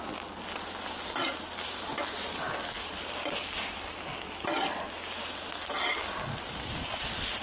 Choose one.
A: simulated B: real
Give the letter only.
B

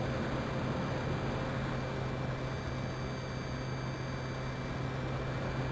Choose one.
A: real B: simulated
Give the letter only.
A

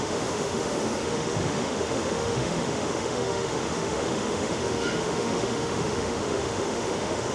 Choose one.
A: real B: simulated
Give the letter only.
B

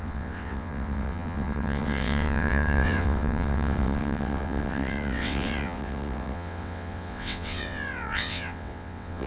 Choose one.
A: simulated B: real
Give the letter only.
A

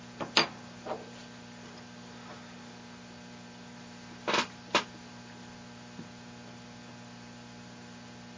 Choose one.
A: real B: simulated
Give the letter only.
B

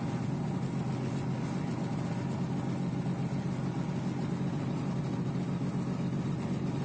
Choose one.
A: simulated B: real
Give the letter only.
B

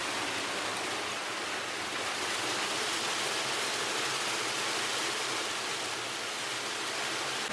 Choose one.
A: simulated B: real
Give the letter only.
B